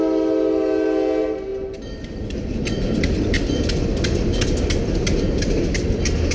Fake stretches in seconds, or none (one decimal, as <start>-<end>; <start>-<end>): none

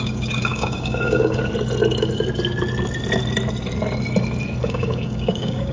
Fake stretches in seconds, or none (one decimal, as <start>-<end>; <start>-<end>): 0.0-1.4; 4.6-5.7